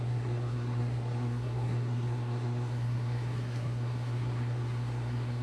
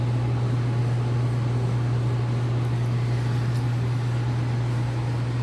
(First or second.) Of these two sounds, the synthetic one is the first